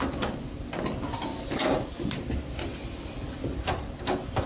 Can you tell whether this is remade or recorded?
remade